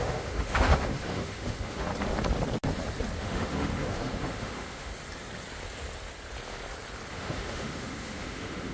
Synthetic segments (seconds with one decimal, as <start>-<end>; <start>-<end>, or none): 0.0-1.9; 3.2-4.9; 7.1-8.7